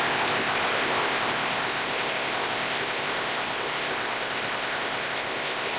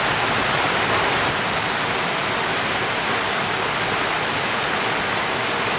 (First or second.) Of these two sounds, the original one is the second